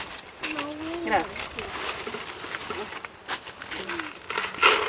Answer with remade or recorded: recorded